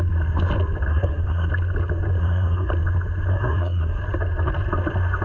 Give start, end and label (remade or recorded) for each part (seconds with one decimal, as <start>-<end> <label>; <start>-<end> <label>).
0.0-0.9 recorded; 0.9-1.5 remade; 1.5-2.2 recorded; 2.2-2.7 remade; 2.7-3.3 recorded; 3.3-4.0 remade; 4.0-5.2 recorded